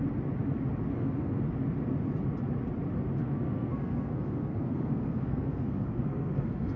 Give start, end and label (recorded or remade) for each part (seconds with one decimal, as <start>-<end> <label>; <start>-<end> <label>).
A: 0.0-0.9 recorded; 0.9-1.4 remade; 1.4-3.2 recorded; 3.2-6.8 remade

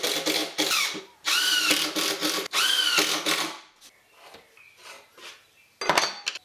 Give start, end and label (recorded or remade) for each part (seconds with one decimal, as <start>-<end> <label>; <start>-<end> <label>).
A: 0.0-6.4 recorded